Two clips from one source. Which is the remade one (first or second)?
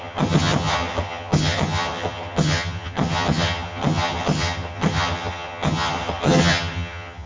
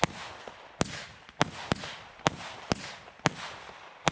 first